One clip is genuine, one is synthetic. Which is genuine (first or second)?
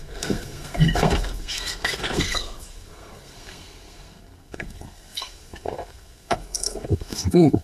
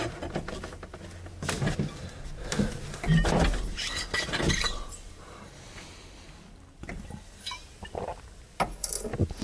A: second